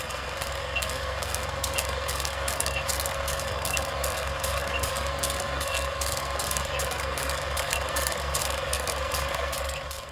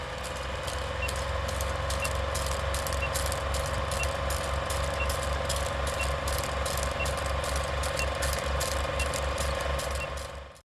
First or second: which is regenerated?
first